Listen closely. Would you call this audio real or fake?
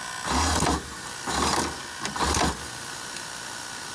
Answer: real